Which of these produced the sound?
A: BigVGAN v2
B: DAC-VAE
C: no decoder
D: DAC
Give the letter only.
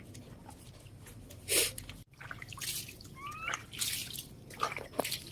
C